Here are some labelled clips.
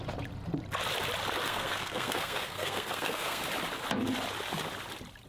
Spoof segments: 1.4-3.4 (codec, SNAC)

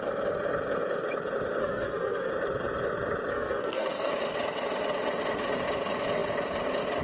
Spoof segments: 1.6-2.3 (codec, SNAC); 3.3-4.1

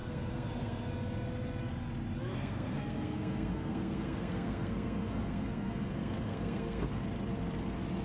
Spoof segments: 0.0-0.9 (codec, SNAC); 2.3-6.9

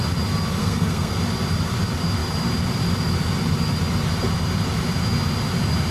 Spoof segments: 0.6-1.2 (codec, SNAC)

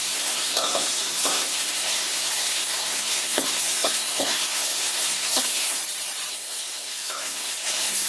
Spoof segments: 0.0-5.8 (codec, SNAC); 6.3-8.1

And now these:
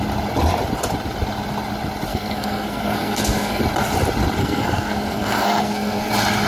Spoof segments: 2.1-3.6 (codec, SNAC); 4.4-6.1